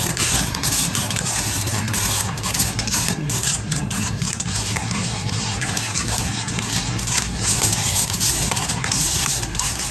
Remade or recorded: remade